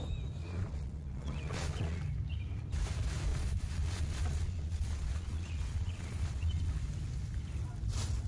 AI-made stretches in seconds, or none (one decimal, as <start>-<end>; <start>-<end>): 0.4-2.0; 3.3-6.7